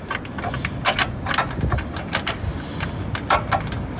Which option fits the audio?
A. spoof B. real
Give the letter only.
B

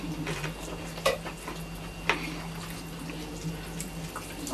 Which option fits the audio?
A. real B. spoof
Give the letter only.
A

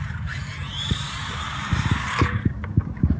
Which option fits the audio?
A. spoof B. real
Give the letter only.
A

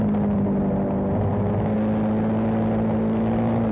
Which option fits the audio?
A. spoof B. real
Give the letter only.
B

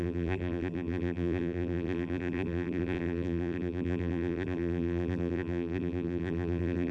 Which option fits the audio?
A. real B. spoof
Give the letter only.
B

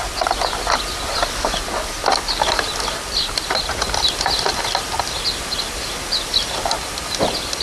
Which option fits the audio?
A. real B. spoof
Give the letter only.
A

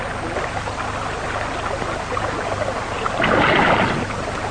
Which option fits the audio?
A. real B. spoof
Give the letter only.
A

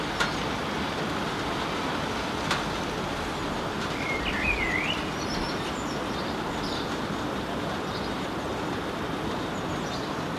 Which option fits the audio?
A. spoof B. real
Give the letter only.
B